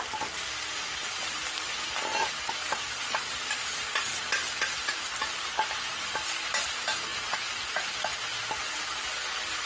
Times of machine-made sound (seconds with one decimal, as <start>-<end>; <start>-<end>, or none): none

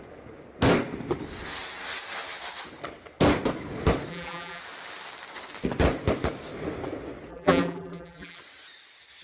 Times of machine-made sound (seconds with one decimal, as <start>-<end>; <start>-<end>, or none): 4.1-4.6; 7.3-8.4